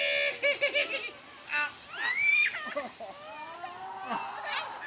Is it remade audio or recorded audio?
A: recorded